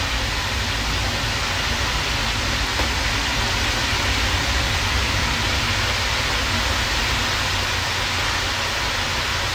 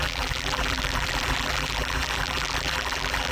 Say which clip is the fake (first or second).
second